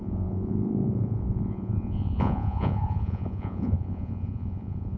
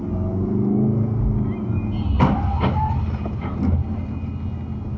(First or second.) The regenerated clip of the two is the first